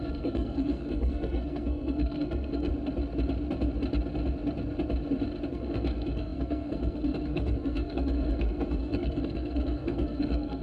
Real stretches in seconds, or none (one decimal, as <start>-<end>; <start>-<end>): 2.7-5.5